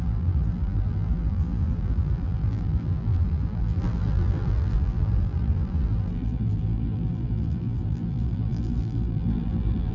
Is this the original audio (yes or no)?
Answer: no